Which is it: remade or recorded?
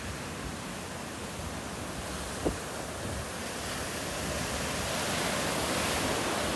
recorded